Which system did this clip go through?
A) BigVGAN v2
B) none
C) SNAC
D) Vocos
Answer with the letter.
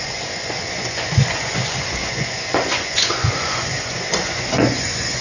D